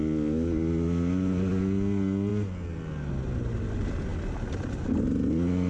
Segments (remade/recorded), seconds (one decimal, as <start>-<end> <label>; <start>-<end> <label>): 0.0-5.7 recorded